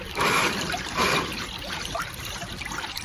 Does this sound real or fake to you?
fake